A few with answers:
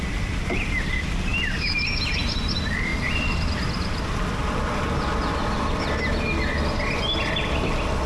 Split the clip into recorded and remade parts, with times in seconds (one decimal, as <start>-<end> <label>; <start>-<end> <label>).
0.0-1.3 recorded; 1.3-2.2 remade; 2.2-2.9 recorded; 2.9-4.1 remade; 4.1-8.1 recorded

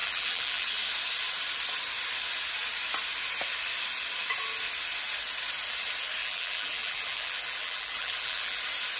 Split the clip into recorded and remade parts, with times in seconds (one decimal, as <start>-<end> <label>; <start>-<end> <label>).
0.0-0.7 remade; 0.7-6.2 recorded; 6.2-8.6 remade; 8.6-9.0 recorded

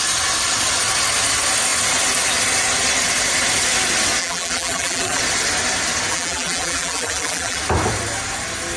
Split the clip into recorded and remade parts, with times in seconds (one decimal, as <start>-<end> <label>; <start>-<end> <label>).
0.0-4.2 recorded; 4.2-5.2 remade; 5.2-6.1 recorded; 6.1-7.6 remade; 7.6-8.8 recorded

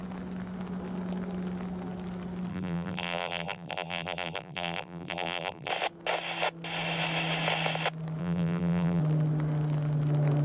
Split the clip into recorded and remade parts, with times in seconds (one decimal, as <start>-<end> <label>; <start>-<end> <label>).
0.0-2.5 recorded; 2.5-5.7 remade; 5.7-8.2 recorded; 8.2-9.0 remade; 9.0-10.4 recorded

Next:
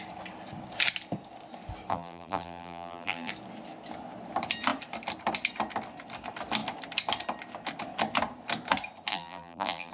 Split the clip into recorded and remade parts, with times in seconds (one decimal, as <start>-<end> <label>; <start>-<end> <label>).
0.0-1.9 recorded; 1.9-3.3 remade; 3.3-9.1 recorded; 9.1-9.9 remade

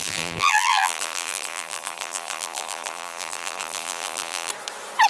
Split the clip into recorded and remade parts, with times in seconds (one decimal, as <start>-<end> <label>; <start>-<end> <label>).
0.0-4.5 remade; 4.5-5.1 recorded

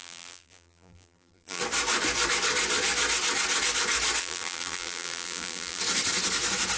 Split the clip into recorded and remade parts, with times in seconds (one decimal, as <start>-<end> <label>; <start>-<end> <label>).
0.0-1.6 remade; 1.6-4.2 recorded; 4.2-5.8 remade; 5.8-6.8 recorded